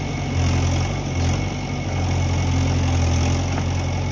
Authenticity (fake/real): real